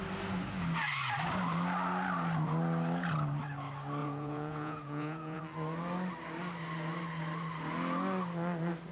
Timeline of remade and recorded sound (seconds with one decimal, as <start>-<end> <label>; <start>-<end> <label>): 0.0-4.0 recorded; 4.0-5.4 remade; 5.4-8.9 recorded